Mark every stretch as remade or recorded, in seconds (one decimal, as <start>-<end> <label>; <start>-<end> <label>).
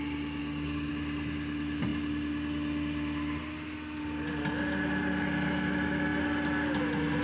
0.0-0.4 recorded; 0.4-0.9 remade; 0.9-7.2 recorded